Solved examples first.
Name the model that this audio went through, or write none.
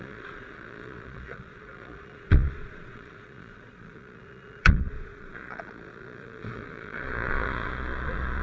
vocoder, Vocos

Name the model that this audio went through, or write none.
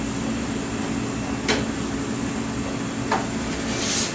none